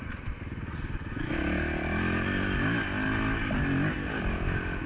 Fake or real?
real